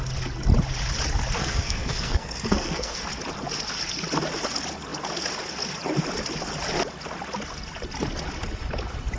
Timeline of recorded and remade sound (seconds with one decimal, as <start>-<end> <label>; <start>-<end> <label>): 0.0-1.4 recorded; 1.4-3.0 remade; 3.0-9.2 recorded